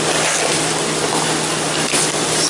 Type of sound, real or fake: real